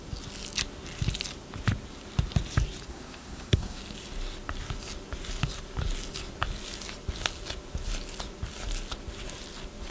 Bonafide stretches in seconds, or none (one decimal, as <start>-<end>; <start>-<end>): 0.0-2.9; 3.8-9.9